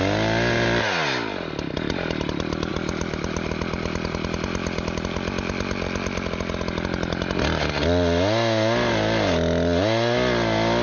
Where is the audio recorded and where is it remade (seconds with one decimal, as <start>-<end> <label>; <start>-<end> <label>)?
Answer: 0.0-10.8 recorded